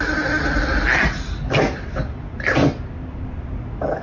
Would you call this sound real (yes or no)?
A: yes